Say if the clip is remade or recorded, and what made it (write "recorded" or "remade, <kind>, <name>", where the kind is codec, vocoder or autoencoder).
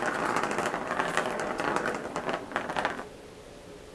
recorded